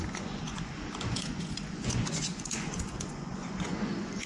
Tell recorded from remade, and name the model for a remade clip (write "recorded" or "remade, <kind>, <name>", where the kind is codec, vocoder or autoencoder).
remade, vocoder, Vocos